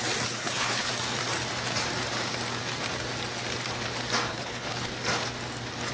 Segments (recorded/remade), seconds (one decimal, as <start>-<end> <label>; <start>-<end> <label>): 0.0-0.4 recorded; 0.4-0.9 remade; 0.9-4.3 recorded; 4.3-4.9 remade; 4.9-5.9 recorded